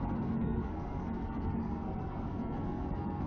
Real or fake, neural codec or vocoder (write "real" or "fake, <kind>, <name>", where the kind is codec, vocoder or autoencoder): fake, codec, SNAC